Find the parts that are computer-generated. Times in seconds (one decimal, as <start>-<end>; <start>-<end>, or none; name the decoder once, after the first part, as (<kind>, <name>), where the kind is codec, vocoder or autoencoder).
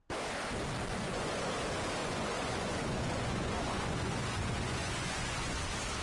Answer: 0.9-1.5 (vocoder, Vocos); 2.0-5.6